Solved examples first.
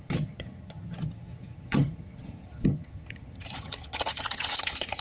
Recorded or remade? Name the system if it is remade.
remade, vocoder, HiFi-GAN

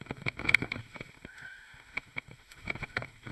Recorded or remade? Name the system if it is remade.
remade, autoencoder, DAC-VAE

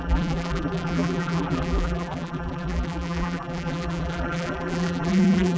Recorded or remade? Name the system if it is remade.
remade, vocoder, BigVGAN v2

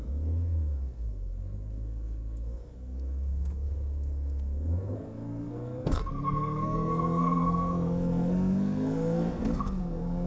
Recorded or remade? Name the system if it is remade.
remade, codec, SNAC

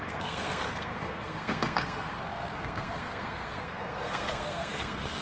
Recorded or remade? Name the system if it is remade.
remade, codec, SNAC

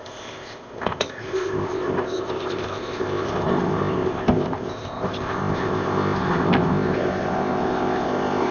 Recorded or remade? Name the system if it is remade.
remade, codec, ZipCodec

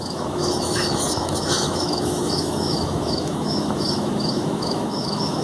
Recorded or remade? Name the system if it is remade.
remade, autoencoder, DAC-VAE